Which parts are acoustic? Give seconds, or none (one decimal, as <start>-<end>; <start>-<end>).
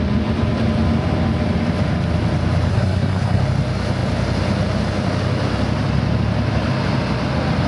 0.0-2.7; 3.4-7.7